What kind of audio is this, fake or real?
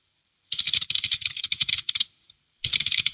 real